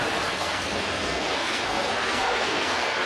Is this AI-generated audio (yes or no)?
yes